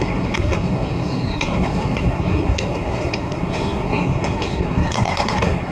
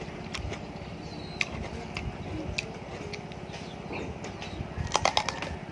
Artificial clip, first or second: first